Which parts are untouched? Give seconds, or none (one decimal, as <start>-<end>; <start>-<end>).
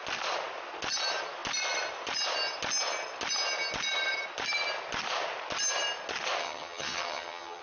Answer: 0.0-6.4